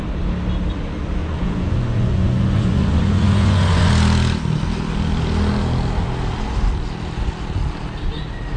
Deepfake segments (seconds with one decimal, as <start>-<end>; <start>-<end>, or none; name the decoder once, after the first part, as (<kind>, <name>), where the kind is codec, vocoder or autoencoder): 1.2-3.9 (vocoder, Vocos)